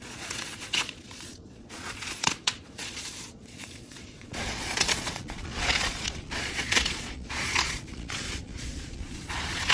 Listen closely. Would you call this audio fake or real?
fake